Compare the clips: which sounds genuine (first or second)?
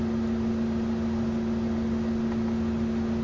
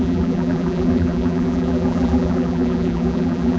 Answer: first